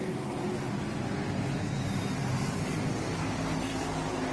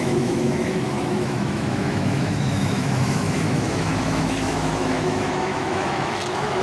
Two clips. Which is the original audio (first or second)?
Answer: first